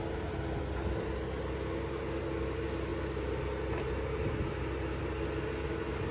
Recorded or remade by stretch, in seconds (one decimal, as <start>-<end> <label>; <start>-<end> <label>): 0.0-6.1 recorded